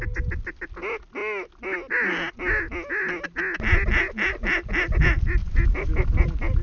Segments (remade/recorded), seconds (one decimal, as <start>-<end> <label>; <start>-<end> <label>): 0.0-6.6 recorded